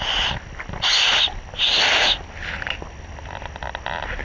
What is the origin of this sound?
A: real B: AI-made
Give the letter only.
A